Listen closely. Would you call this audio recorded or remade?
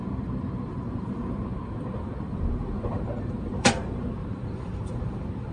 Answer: remade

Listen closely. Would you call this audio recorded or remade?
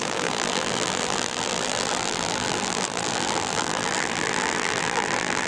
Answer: remade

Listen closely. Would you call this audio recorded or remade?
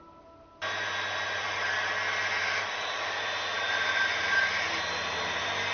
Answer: remade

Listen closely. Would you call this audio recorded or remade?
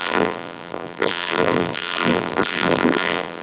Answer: remade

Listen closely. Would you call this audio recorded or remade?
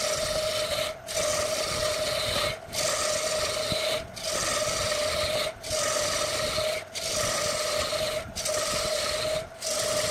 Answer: recorded